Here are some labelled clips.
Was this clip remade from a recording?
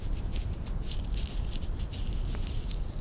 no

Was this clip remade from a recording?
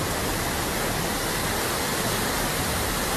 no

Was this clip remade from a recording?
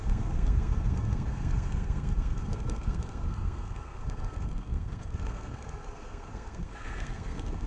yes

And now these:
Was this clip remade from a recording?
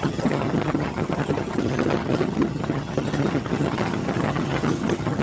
yes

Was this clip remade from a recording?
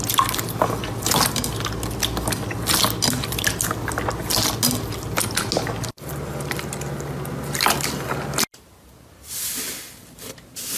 no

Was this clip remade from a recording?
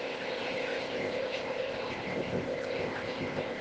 yes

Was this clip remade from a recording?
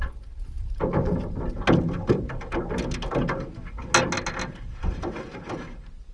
no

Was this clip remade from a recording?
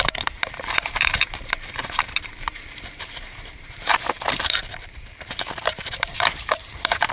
yes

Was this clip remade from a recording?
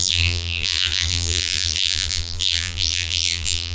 yes